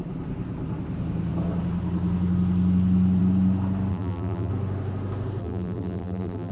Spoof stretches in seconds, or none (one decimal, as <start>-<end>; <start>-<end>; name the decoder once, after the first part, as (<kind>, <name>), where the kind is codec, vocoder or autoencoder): 3.9-4.5 (vocoder, BigVGAN v2); 5.4-6.5